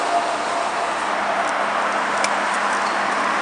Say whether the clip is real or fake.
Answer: real